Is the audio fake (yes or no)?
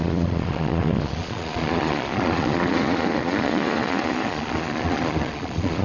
yes